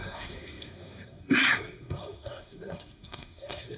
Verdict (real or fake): fake